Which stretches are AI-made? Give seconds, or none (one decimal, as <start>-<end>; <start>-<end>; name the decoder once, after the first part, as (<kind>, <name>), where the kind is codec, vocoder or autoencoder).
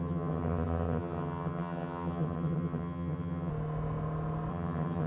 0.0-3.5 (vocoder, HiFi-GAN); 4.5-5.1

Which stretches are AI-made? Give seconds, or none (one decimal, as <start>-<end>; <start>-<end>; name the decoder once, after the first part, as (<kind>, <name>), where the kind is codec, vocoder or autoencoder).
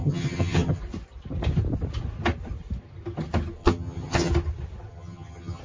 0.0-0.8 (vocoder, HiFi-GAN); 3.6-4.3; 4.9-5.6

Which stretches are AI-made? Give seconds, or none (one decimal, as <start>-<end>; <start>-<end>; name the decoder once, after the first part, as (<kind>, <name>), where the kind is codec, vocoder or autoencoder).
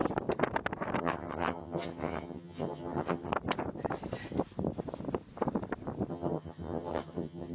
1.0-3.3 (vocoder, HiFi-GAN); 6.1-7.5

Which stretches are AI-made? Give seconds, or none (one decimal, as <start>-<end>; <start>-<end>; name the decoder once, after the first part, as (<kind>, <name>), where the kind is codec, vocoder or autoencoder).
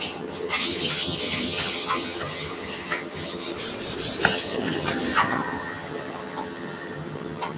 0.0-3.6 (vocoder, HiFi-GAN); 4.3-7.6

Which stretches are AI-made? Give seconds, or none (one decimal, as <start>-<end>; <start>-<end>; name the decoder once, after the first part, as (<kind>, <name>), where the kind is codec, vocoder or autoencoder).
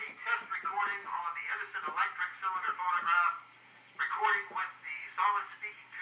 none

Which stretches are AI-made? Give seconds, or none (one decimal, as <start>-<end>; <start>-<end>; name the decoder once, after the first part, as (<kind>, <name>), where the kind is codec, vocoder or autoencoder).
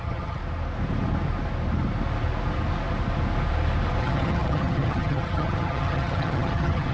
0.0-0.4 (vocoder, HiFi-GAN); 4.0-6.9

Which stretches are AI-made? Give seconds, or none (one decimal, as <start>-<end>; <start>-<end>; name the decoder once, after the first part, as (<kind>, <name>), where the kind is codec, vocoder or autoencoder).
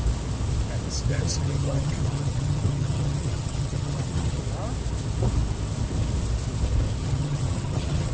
1.1-4.4 (vocoder, HiFi-GAN); 7.0-8.1